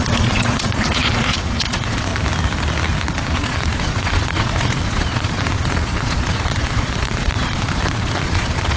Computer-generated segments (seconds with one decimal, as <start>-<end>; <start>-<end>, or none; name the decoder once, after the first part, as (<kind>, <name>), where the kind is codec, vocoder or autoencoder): 0.0-2.1 (vocoder, Vocos); 3.2-8.8